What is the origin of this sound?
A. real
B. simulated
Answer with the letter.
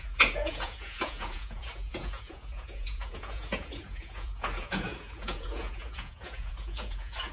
B